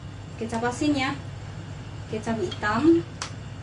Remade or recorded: recorded